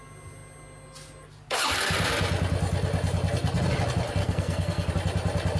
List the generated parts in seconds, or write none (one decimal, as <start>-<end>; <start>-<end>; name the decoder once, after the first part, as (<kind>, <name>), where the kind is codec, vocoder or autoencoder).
4.2-4.9 (codec, SNAC)